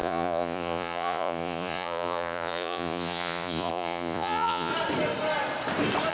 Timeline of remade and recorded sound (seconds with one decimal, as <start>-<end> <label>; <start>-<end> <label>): 0.0-4.7 remade; 4.7-6.1 recorded